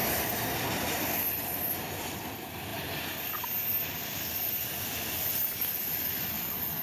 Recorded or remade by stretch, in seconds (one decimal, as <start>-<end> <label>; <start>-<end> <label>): 0.0-1.0 remade; 1.0-2.7 recorded; 2.7-3.3 remade; 3.3-6.8 recorded